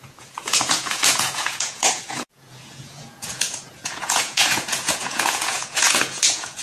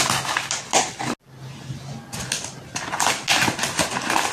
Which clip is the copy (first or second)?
first